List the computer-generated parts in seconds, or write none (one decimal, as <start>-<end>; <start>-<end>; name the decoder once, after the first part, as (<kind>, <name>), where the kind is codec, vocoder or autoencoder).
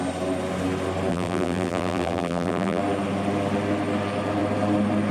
1.1-2.8 (vocoder, BigVGAN v2)